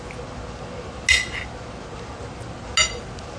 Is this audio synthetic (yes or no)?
no